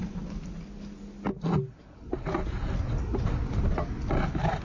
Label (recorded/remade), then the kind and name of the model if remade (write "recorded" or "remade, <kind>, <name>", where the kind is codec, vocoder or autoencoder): recorded